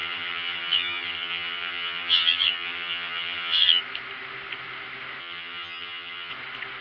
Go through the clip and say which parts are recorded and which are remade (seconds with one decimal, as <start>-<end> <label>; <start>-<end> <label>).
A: 0.0-3.8 remade; 3.8-5.2 recorded; 5.2-6.3 remade; 6.3-6.8 recorded